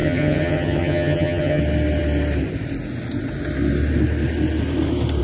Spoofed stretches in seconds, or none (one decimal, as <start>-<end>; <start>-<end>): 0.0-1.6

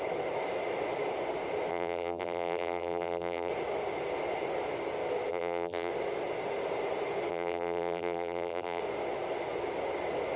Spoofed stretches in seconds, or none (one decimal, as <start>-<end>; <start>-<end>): 1.7-3.5; 5.3-5.9; 7.3-8.8

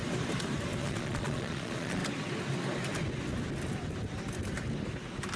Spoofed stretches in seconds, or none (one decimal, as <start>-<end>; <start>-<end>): 0.8-2.0

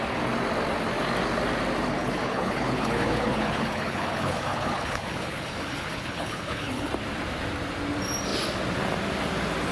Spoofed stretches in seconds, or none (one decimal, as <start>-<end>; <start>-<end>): 1.9-6.9

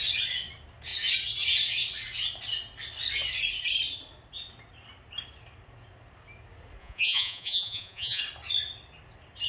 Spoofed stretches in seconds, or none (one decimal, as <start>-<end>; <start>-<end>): 6.8-8.2

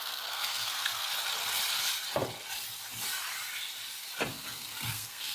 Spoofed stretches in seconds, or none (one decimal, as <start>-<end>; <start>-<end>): 0.0-1.1; 4.3-5.3

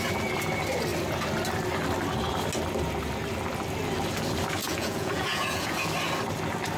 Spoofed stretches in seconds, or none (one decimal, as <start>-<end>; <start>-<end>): 4.6-5.9